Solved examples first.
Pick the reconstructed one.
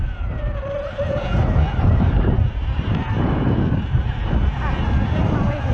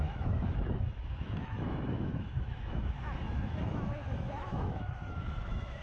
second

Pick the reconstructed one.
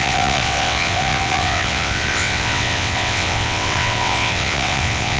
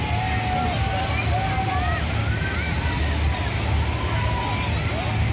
first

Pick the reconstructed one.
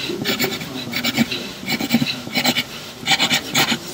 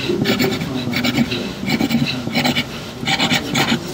first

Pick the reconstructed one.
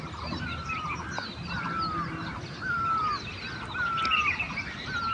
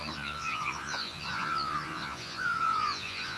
second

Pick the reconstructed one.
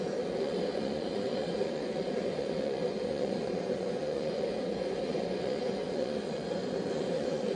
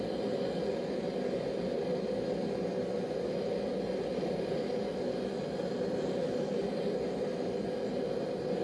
first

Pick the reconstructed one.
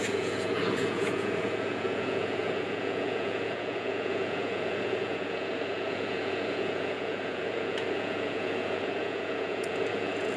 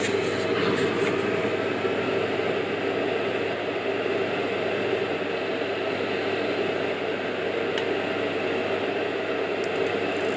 first